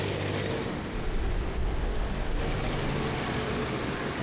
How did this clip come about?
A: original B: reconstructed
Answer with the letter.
A